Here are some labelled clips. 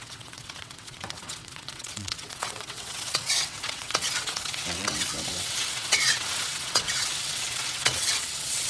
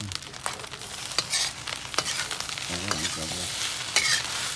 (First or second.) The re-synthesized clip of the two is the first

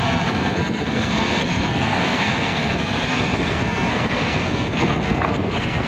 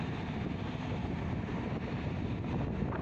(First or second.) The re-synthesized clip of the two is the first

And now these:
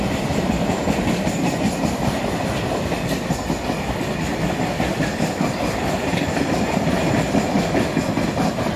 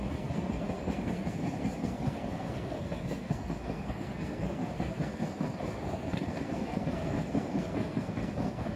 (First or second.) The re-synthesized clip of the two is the second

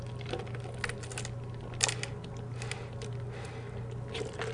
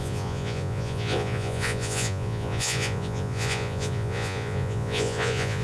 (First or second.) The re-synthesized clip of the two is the second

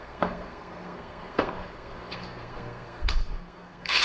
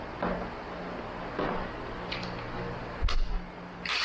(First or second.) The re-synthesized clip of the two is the first